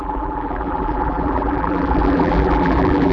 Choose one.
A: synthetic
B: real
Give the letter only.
A